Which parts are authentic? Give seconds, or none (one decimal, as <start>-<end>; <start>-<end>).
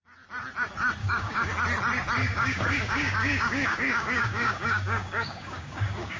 0.0-1.0; 1.5-2.2